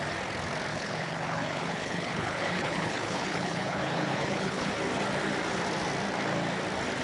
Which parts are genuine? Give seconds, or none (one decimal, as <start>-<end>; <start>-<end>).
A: 0.0-0.7; 4.7-7.0